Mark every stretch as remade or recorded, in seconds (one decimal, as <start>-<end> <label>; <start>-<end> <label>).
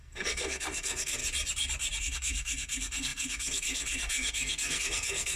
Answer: 0.0-1.2 remade; 1.2-2.0 recorded; 2.0-5.4 remade